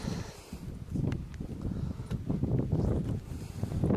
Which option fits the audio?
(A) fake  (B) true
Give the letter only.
A